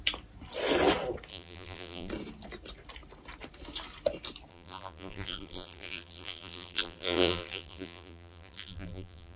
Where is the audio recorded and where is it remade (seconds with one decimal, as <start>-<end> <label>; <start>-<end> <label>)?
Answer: 0.0-1.3 recorded; 1.3-2.1 remade; 2.1-4.5 recorded; 4.5-9.4 remade